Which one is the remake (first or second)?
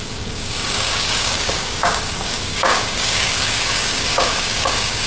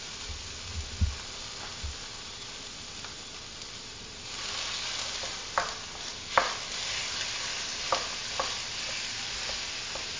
first